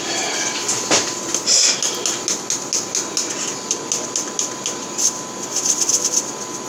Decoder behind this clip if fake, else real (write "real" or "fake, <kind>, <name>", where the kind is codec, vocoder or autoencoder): real